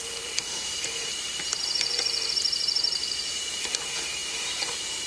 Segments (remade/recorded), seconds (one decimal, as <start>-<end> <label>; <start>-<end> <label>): 0.0-5.1 remade